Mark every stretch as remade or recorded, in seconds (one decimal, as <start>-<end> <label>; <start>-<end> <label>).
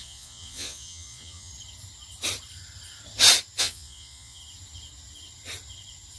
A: 0.0-1.5 remade; 1.5-3.6 recorded; 3.6-4.4 remade; 4.4-6.2 recorded